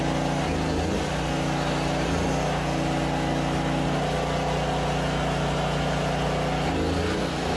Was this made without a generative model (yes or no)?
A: yes